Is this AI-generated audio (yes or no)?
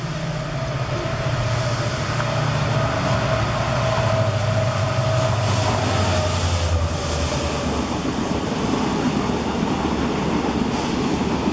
no